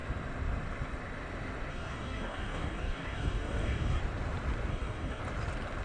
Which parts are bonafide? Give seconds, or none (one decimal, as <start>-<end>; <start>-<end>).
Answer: 0.0-1.7; 4.0-4.7; 5.2-5.8